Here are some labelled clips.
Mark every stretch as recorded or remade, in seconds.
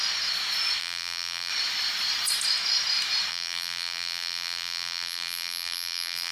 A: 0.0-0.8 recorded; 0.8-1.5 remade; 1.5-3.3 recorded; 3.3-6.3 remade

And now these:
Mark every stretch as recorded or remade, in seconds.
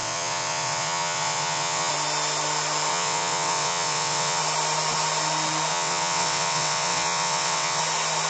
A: 0.0-1.9 remade; 1.9-2.9 recorded; 2.9-4.4 remade; 4.4-5.7 recorded; 5.7-7.8 remade; 7.8-8.3 recorded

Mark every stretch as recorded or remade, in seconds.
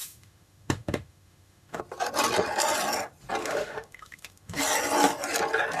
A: 0.0-1.8 remade; 1.8-3.4 recorded; 3.4-4.6 remade; 4.6-5.8 recorded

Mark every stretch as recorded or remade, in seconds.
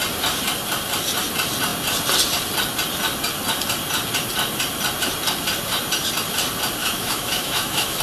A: 0.0-6.8 recorded; 6.8-8.0 remade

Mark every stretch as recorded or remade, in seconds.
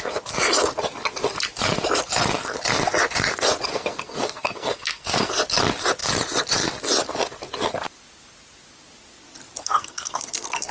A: 0.0-3.7 recorded; 3.7-5.3 remade; 5.3-9.6 recorded; 9.6-10.7 remade